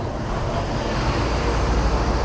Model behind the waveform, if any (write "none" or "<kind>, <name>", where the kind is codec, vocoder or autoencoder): none